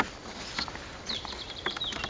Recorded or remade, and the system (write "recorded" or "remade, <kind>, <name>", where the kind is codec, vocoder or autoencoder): recorded